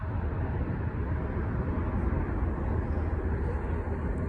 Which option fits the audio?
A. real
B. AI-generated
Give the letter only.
A